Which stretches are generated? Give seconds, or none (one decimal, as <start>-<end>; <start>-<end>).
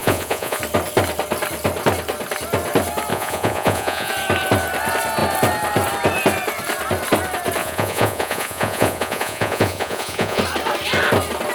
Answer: 0.0-0.6; 3.1-4.1; 7.6-10.4